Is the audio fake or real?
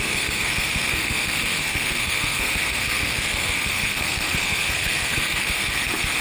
fake